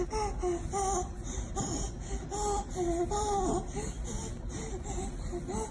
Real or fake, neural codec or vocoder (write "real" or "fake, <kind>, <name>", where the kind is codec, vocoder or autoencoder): real